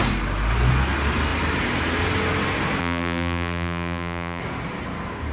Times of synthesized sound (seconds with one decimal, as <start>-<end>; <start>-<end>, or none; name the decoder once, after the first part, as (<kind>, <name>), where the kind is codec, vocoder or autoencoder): 2.8-4.4 (vocoder, BigVGAN v2)